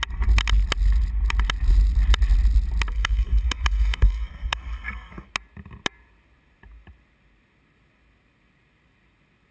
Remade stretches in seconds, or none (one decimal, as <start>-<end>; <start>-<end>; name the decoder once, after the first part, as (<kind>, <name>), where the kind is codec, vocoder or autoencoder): 2.9-5.3 (codec, SNAC)